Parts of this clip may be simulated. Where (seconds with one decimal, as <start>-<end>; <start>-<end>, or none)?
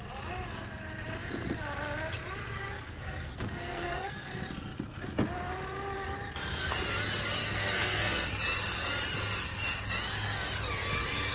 2.4-4.3; 7.4-8.3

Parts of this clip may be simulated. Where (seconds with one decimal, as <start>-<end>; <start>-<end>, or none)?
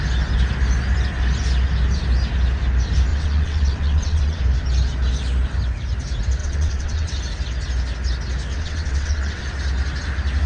3.1-4.4; 6.4-7.2; 8.5-9.4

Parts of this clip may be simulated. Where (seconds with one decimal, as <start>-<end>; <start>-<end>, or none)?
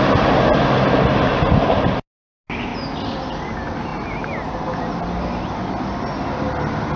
none